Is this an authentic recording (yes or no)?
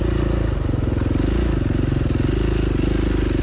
yes